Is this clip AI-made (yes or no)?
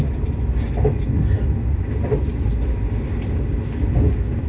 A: no